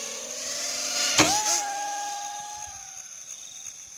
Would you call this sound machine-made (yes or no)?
no